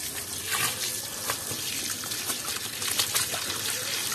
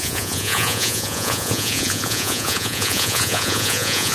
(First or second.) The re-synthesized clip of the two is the second